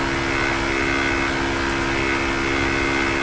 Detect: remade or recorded recorded